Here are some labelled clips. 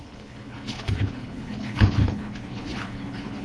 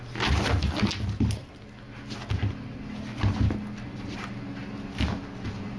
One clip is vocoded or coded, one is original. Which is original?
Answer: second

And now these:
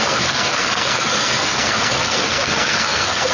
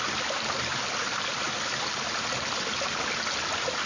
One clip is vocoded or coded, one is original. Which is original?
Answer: second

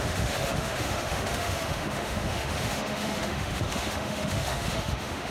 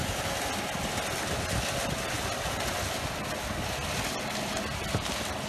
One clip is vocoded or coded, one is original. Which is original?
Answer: second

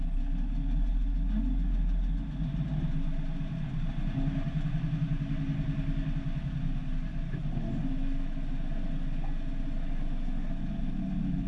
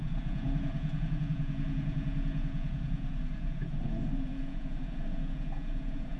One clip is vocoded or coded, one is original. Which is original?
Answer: first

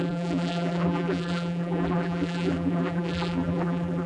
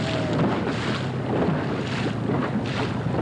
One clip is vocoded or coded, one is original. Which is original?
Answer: second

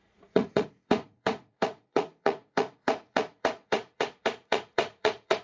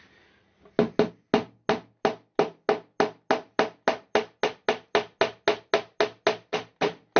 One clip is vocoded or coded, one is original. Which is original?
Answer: second